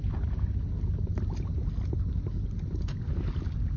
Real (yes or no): yes